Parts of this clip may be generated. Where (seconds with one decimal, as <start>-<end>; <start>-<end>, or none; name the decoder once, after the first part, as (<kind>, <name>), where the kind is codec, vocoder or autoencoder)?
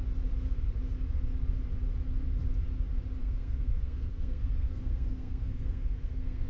3.2-6.5 (codec, SNAC)